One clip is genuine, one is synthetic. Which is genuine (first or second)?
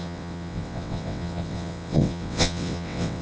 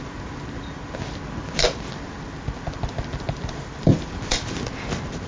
second